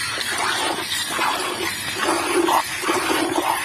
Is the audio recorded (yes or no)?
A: no